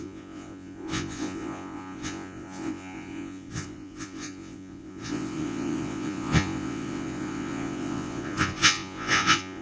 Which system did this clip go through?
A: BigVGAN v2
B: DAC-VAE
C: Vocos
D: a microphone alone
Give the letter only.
C